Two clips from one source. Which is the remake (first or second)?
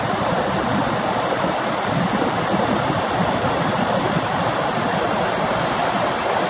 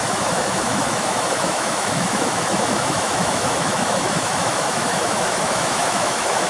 second